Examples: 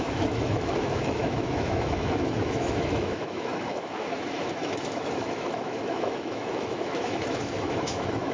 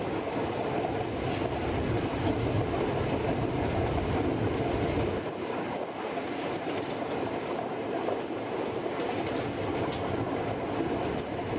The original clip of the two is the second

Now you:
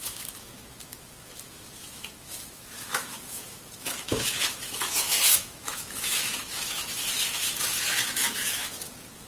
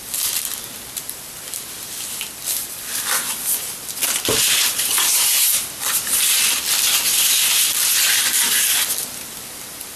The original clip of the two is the second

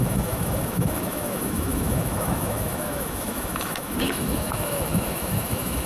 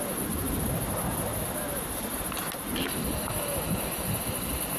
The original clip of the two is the second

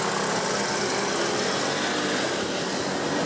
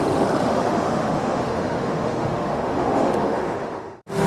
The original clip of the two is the first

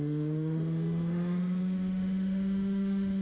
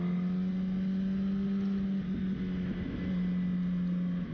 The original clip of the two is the second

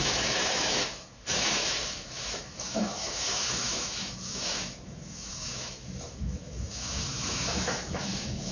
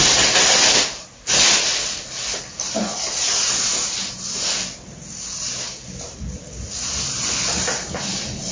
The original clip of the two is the second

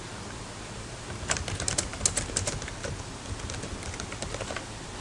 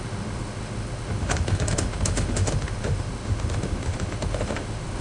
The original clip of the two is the first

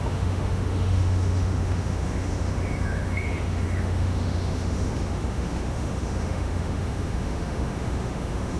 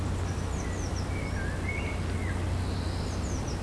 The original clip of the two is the second